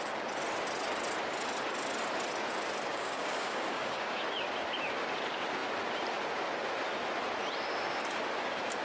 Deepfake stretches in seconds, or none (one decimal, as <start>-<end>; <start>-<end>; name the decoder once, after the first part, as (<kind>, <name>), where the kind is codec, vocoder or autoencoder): 2.9-4.2 (codec, DAC)